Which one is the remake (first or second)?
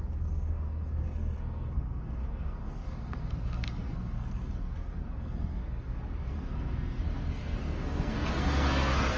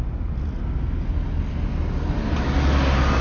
first